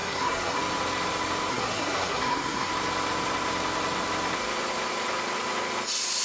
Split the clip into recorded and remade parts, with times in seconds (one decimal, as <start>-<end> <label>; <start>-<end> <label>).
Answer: 0.0-0.6 remade; 0.6-1.5 recorded; 1.5-2.7 remade; 2.7-6.2 recorded